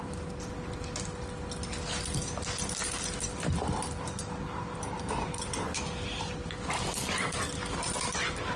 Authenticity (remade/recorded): recorded